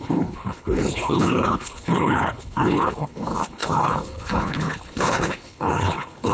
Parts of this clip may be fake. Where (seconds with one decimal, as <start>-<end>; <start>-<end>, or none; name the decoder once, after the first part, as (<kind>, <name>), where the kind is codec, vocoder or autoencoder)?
0.0-6.3 (codec, HILCodec)